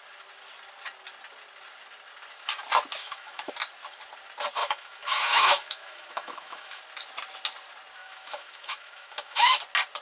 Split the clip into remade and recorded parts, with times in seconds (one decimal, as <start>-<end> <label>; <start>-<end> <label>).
0.0-3.0 recorded; 3.0-3.5 remade; 3.5-4.6 recorded; 4.6-6.8 remade; 6.8-8.0 recorded; 8.0-9.5 remade; 9.5-10.0 recorded